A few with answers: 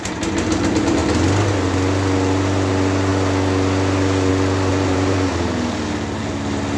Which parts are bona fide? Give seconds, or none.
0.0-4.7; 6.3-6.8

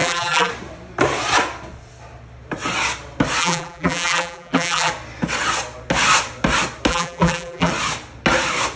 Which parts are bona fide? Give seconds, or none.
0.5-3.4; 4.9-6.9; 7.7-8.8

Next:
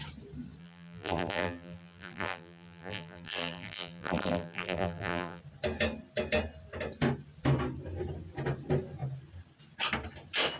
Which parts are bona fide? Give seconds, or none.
0.0-0.6; 5.4-10.6

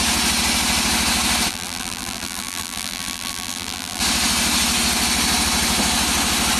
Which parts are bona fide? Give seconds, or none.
0.0-1.5; 4.0-6.6

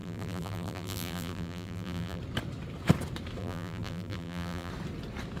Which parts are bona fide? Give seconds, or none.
2.2-3.4; 4.7-5.4

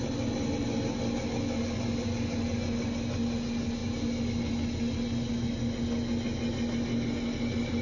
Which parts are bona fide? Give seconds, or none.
0.0-7.8

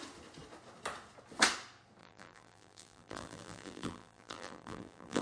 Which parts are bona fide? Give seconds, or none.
0.0-2.0

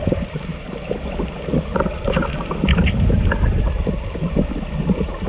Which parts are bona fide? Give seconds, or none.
0.0-5.3